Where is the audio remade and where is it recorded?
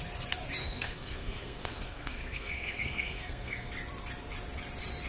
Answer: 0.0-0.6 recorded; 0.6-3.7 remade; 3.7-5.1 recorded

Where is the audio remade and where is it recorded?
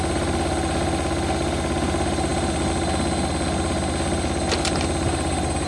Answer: 0.0-5.7 recorded